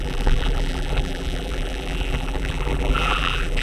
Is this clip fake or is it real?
fake